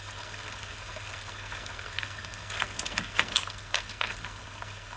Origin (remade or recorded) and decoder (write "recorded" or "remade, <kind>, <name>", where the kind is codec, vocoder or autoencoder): remade, codec, SNAC